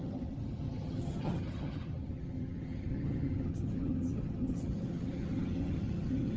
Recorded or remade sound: remade